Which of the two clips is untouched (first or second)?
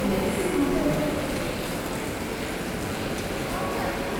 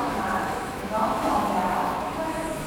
first